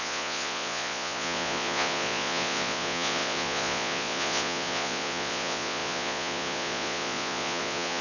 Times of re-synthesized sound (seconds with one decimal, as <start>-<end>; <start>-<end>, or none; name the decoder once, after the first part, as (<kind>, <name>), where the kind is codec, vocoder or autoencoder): 0.0-8.0 (vocoder, Vocos)